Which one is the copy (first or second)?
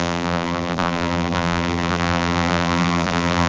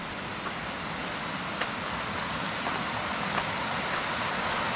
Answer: first